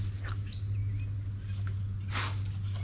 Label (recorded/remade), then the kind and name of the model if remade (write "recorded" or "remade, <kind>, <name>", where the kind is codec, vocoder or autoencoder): recorded